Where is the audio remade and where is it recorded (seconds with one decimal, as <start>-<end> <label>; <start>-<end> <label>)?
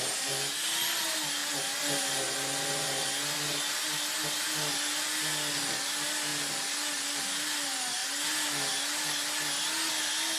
0.0-10.4 recorded